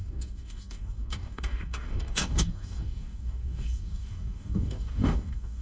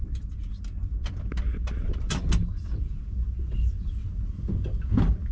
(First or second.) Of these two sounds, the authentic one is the second